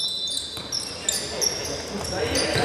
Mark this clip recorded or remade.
recorded